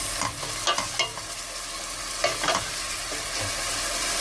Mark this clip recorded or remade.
recorded